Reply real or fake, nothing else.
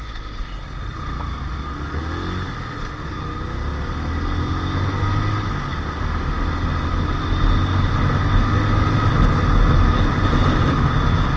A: real